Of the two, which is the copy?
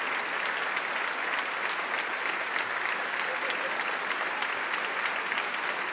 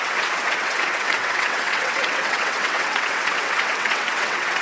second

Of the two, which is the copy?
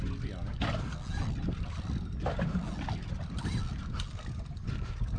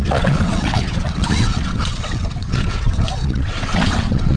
second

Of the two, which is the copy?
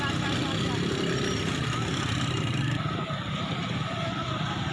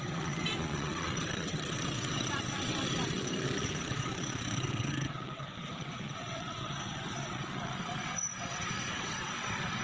second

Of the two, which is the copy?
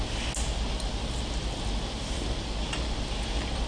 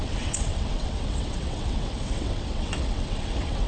second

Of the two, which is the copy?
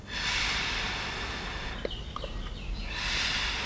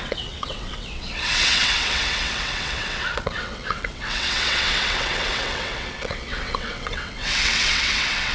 second